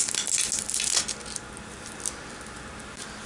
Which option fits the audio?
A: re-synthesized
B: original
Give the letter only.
B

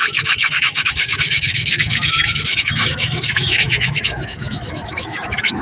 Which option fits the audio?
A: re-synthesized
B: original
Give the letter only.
A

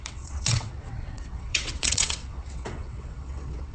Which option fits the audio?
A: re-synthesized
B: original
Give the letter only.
A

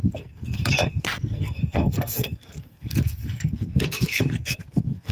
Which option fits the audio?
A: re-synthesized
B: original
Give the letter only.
A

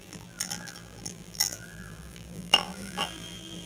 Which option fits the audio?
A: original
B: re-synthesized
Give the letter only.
B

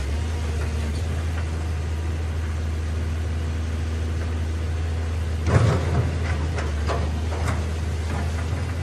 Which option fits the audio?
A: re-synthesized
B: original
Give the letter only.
B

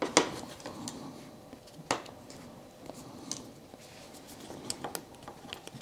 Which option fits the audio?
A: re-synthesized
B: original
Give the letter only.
B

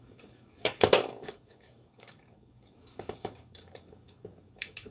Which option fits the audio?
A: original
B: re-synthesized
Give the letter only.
B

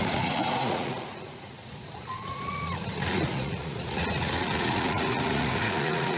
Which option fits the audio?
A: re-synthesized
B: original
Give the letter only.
A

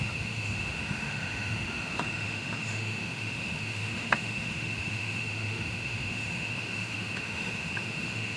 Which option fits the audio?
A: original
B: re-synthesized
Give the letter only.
B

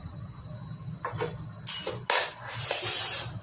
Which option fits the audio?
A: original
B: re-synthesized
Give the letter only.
A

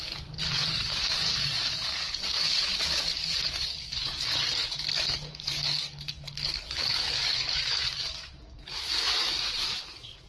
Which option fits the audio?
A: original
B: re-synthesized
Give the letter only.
B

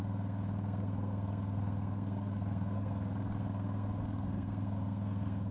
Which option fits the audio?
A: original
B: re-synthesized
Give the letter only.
B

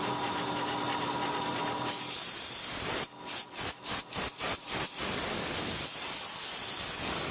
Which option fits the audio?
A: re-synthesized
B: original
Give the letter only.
B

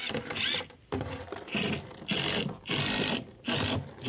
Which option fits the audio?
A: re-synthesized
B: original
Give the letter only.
B